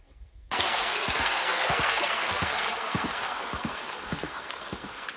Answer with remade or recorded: remade